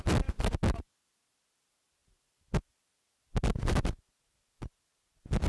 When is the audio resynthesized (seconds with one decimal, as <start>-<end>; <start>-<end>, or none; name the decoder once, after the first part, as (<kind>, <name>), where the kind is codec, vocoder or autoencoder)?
none

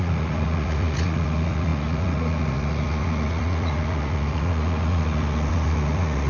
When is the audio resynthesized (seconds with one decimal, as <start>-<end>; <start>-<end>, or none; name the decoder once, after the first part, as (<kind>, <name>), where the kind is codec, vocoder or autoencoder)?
0.0-6.3 (vocoder, Vocos)

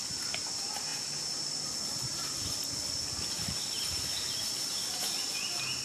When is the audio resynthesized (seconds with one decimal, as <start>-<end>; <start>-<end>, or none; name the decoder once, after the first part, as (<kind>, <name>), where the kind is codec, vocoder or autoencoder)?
none

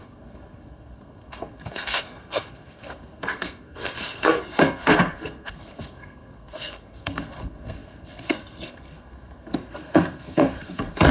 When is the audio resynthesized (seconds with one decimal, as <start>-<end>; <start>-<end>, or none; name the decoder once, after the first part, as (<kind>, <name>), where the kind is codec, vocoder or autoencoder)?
0.0-11.1 (codec, SNAC)

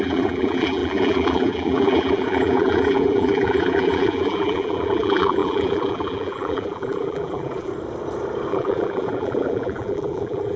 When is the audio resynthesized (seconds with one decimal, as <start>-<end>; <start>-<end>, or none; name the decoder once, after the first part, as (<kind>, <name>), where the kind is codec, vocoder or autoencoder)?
0.0-7.7 (vocoder, BigVGAN v2); 8.5-10.6